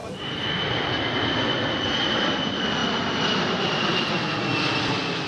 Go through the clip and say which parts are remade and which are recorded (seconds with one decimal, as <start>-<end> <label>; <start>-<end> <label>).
0.0-1.3 remade; 1.3-2.8 recorded; 2.8-4.1 remade; 4.1-5.3 recorded